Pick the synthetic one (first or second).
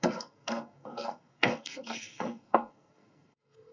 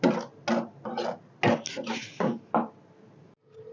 first